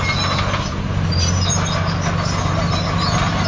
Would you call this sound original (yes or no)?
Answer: yes